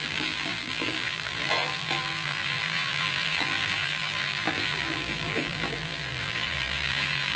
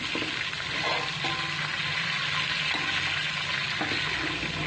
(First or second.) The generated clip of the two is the first